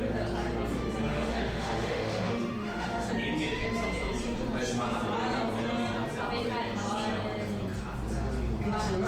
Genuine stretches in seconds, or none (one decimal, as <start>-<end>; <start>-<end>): 0.0-1.1; 3.1-9.1